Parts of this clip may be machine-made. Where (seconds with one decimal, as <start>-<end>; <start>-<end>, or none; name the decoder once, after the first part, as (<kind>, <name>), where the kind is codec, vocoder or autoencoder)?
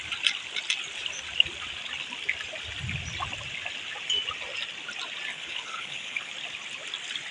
5.3-6.3 (codec, HILCodec)